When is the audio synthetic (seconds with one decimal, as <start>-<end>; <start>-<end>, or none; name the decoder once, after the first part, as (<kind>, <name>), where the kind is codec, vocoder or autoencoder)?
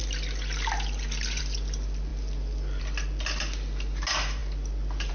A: none